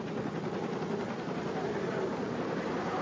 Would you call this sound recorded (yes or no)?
yes